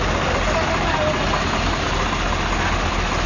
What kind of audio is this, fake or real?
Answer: real